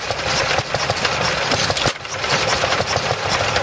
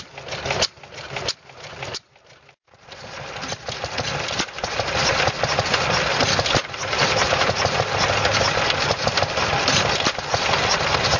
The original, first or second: second